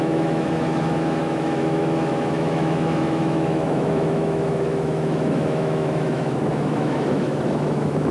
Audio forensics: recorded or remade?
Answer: remade